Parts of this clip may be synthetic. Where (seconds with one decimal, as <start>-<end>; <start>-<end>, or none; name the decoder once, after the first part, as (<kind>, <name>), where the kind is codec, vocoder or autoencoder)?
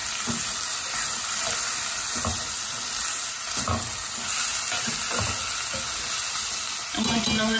none